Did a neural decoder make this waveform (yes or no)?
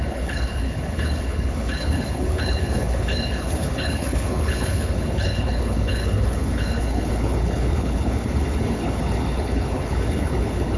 yes